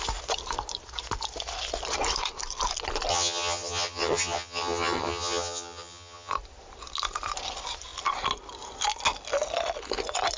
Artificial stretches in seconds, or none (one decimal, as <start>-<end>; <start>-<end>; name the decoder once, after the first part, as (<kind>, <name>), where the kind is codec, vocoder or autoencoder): 3.1-6.3 (vocoder, HiFi-GAN)

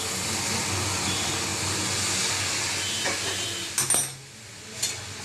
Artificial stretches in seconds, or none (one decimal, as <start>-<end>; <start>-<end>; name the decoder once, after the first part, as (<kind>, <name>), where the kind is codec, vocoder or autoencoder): none

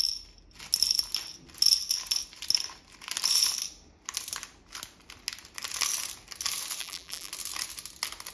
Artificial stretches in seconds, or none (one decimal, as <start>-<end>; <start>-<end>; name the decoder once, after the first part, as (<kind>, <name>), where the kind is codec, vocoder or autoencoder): 6.8-7.3 (vocoder, BigVGAN v2)

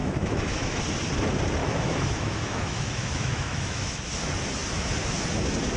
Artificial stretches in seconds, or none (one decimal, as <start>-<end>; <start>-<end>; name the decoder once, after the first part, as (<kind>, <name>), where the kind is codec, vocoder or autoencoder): 0.0-0.8 (autoencoder, DAC-VAE); 1.6-4.1

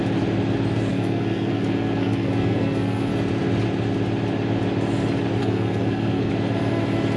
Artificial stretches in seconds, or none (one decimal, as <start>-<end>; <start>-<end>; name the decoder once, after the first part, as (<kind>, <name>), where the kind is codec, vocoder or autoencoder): 0.9-3.1 (codec, SNAC); 5.4-6.3

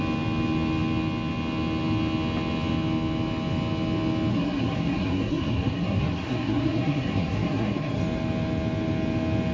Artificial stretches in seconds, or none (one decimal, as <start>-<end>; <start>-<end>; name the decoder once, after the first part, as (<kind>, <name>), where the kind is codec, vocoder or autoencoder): 4.3-8.0 (codec, SNAC)